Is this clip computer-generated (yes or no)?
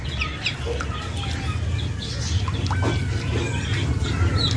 no